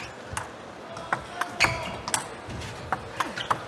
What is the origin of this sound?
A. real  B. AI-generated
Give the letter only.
A